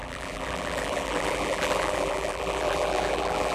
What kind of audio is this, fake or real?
fake